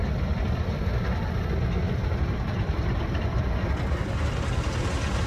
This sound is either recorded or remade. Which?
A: recorded